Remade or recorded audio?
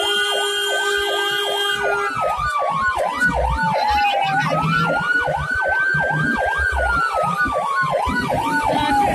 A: recorded